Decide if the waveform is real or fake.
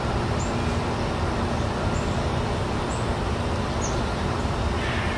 real